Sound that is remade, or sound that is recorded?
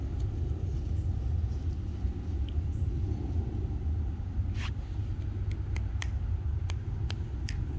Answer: recorded